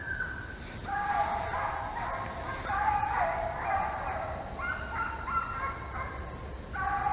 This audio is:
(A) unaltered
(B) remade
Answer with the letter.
A